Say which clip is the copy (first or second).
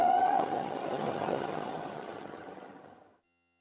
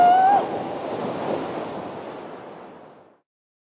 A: first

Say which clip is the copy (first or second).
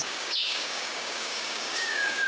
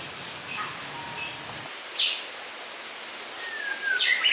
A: first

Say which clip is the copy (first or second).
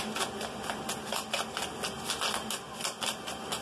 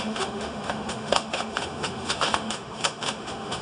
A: second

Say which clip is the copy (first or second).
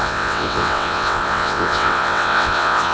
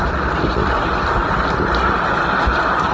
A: first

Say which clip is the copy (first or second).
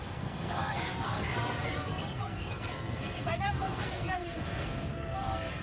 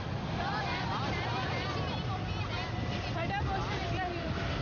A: first